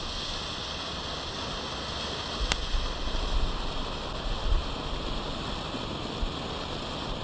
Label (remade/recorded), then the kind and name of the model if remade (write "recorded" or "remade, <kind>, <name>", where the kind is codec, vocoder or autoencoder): recorded